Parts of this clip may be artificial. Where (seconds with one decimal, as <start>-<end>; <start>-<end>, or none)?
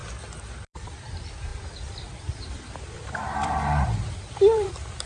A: 0.6-5.1